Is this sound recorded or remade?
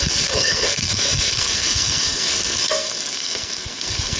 remade